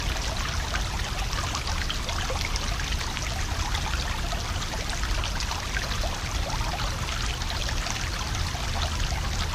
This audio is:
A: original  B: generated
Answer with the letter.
A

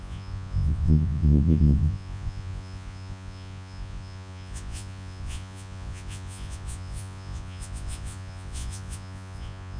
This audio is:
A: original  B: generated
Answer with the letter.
B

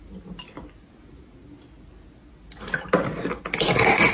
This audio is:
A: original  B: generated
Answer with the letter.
A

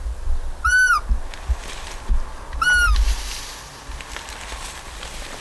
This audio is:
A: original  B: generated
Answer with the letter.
A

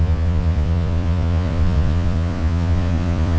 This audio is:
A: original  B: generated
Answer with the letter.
B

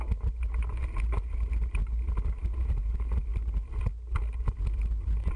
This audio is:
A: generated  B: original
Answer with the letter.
B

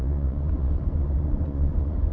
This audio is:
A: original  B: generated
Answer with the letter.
B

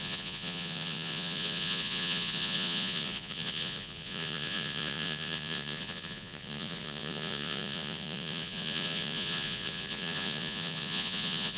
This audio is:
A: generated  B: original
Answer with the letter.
A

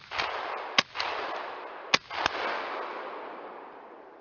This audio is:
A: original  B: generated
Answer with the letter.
A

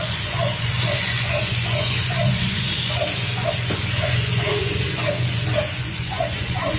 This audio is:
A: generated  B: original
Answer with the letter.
A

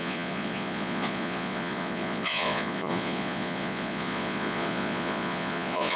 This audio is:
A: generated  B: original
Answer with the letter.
A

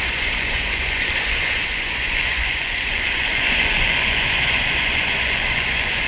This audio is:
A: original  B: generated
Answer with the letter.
B